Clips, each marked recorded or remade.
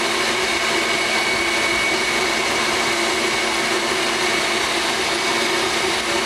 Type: remade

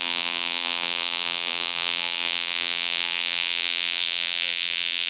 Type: remade